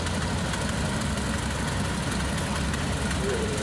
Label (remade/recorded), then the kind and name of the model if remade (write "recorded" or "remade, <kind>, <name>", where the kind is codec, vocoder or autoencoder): recorded